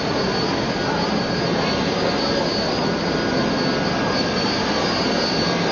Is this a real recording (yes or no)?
yes